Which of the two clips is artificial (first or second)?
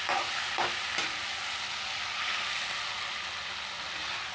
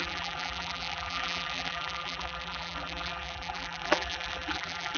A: second